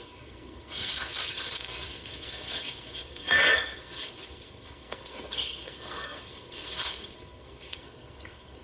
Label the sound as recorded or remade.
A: remade